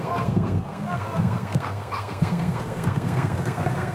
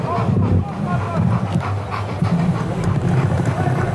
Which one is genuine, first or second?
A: second